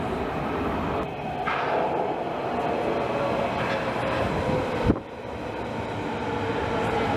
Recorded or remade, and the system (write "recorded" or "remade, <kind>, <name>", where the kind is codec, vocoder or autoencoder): recorded